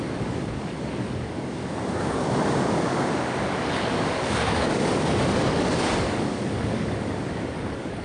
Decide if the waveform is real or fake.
fake